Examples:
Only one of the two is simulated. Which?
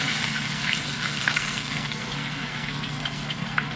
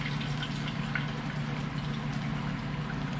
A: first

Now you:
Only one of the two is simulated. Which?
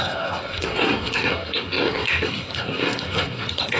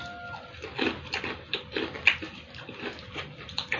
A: first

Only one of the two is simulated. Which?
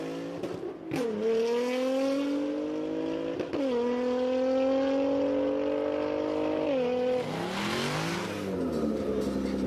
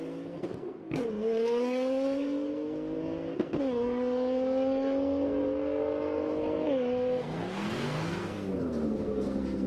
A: second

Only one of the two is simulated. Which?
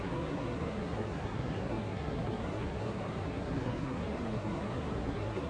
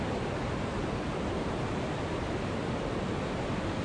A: first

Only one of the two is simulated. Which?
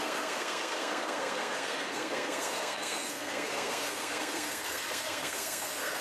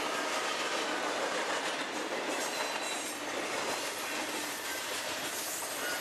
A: first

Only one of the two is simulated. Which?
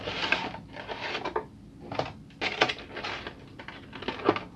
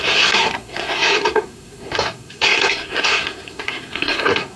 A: second